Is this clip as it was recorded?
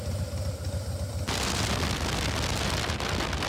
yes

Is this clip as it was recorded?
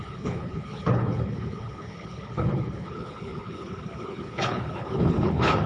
no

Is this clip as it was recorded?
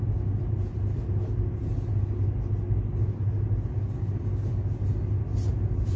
yes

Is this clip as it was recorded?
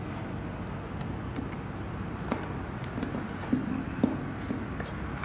yes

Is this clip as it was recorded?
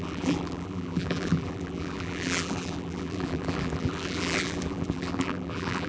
no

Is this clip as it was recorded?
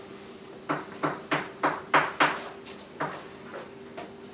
yes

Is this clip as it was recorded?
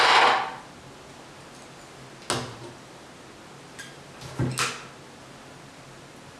yes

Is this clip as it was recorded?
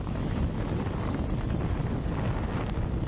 yes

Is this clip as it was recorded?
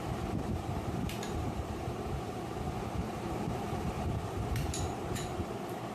no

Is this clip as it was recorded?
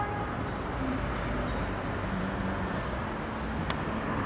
yes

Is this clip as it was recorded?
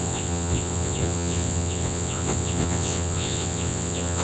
no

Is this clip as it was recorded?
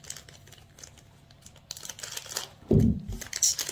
yes